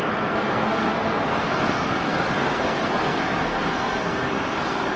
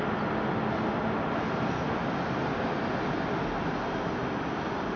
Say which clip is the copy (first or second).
first